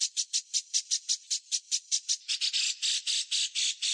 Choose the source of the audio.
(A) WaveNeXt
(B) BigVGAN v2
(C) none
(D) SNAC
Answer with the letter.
C